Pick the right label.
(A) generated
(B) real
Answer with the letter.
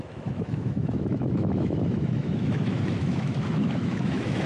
A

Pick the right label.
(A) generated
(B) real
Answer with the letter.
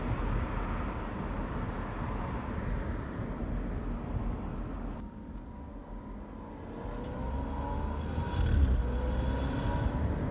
B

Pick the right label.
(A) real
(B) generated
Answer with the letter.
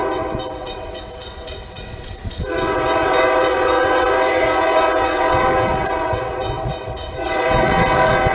B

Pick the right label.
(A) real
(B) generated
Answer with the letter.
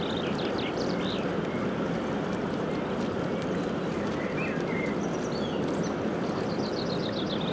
B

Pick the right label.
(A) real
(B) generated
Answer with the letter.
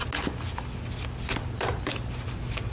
A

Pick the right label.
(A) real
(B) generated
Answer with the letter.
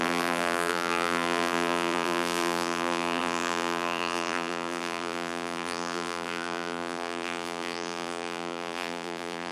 B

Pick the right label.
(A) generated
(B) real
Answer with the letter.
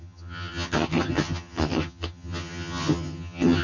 A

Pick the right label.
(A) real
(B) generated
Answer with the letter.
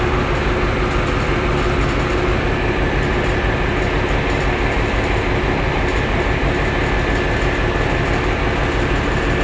A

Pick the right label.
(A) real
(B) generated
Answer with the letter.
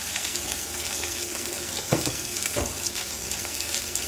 B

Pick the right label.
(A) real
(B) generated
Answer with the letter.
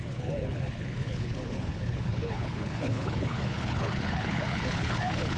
B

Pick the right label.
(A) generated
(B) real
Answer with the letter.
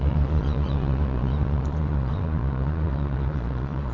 A